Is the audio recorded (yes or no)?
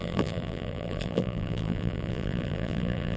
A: no